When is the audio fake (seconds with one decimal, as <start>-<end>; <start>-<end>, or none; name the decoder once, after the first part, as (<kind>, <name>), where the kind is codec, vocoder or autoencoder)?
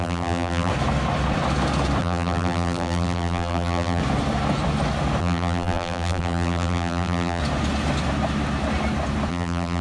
0.0-0.7 (vocoder, BigVGAN v2); 2.0-4.0; 5.2-7.4; 9.3-9.8